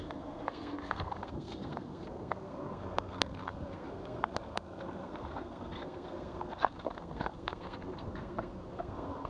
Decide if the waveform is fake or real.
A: fake